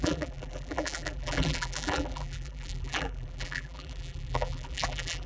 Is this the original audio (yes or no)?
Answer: no